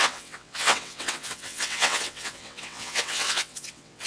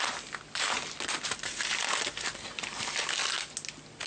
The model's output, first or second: first